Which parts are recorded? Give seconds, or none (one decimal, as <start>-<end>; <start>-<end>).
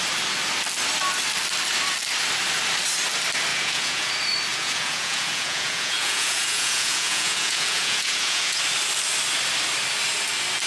0.0-3.5; 4.1-4.5; 8.6-10.7